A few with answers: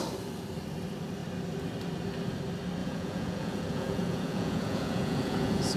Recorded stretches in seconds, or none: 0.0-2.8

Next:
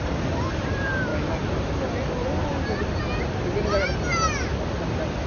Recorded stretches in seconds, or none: 1.1-1.7; 2.5-5.3

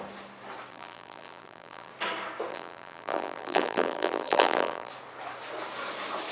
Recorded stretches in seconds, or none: 0.0-0.7; 1.9-2.5; 4.9-6.3

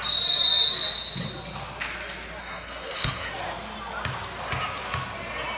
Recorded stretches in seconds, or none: 0.0-2.4; 3.3-5.6

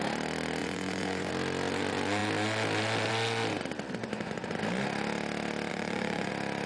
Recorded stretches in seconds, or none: 0.0-0.6; 1.3-4.0; 4.6-5.7; 6.3-6.7

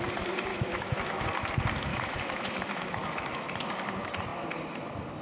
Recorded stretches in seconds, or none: 0.0-0.5; 1.2-1.9; 3.5-5.2

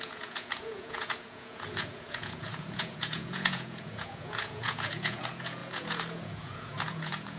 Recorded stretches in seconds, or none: none

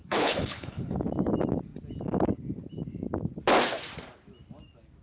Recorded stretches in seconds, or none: 1.0-5.0